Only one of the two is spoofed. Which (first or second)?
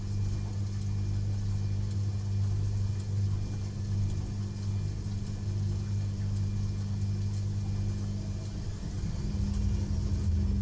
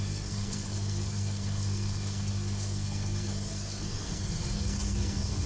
second